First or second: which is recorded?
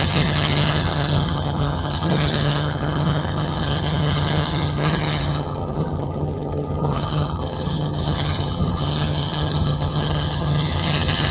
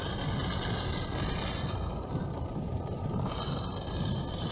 second